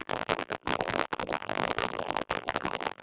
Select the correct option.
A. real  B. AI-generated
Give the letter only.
B